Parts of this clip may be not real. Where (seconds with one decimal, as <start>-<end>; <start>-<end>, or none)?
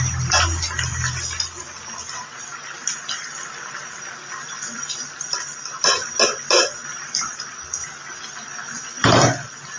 6.8-7.5